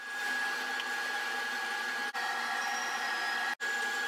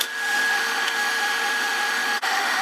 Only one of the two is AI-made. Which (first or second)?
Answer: second